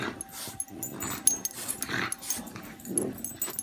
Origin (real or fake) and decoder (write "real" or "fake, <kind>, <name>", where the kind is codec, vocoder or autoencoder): real